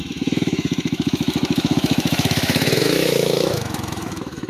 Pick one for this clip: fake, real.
fake